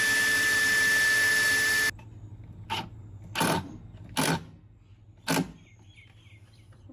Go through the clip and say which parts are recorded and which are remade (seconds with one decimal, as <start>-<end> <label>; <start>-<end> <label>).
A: 0.0-6.9 recorded